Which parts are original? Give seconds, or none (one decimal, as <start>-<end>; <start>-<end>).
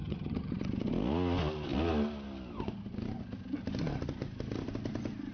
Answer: 0.5-5.3